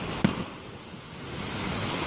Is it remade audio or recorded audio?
recorded